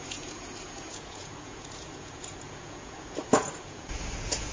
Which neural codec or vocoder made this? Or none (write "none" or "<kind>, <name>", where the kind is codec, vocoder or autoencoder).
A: vocoder, Vocos